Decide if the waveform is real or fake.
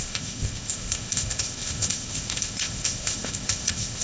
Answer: fake